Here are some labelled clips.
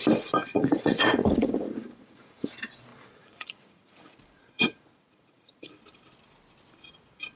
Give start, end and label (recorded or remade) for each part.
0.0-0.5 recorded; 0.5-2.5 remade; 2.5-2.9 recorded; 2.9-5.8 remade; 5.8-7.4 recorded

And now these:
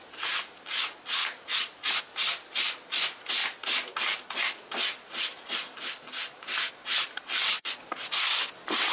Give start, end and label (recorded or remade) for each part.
0.0-1.2 recorded; 1.2-2.0 remade; 2.0-8.9 recorded